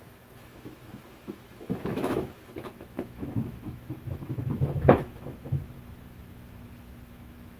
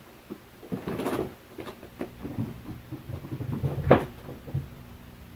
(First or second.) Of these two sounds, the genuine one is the second